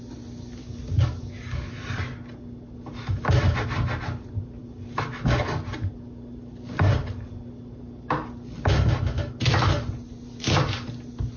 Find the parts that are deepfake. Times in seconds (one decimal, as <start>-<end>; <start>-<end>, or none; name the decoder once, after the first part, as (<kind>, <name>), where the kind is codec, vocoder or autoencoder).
0.6-1.7 (codec, DAC)